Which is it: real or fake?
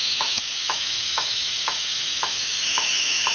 fake